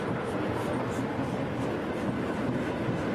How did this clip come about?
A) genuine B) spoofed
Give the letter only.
A